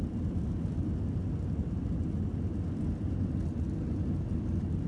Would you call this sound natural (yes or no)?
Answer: yes